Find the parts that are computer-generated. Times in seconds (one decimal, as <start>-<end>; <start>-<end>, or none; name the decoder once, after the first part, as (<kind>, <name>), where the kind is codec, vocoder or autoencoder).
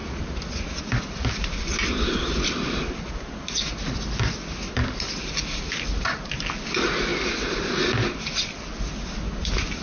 none